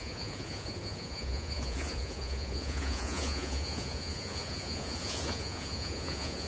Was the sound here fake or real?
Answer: fake